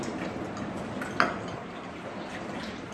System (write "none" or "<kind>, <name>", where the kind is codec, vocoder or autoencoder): none